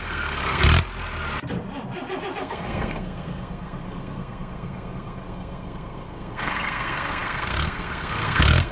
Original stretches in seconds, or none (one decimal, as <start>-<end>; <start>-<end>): 0.6-2.4